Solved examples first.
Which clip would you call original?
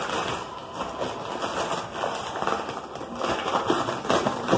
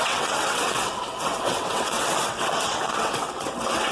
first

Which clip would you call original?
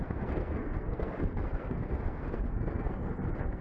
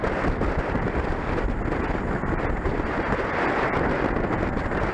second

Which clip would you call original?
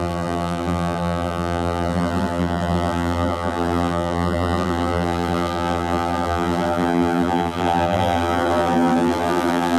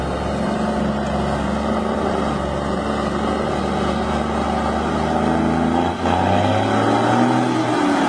second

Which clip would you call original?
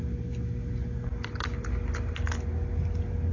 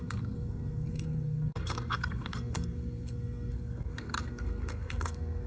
first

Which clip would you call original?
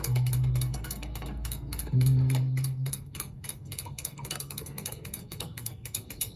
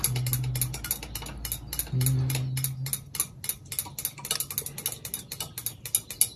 second